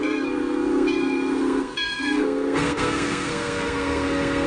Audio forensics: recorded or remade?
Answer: remade